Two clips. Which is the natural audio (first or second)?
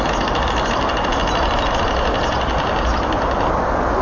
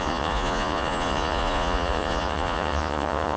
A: first